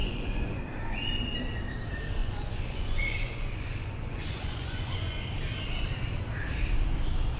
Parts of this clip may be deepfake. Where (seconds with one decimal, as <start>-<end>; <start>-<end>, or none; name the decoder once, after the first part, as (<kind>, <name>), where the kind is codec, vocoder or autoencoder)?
0.0-0.6 (vocoder, Vocos); 2.2-5.2